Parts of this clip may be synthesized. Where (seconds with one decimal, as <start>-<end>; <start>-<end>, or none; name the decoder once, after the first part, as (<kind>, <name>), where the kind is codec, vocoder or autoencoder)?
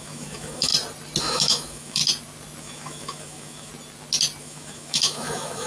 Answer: 0.0-0.7 (autoencoder, DAC-VAE); 1.2-2.0; 2.6-3.7; 4.4-5.7